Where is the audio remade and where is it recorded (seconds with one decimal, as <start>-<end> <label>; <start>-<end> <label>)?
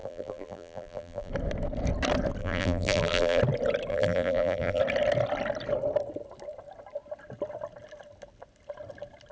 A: 0.0-1.3 remade; 1.3-2.4 recorded; 2.4-3.4 remade; 3.4-3.9 recorded; 3.9-4.8 remade; 4.8-9.3 recorded